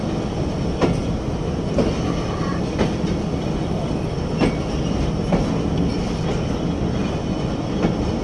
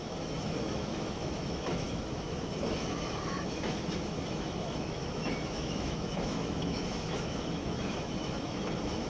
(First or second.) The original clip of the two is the first